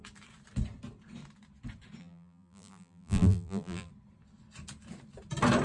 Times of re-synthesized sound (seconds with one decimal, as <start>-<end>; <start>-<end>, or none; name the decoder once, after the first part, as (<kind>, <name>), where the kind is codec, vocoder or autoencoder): 2.0-3.9 (vocoder, BigVGAN v2)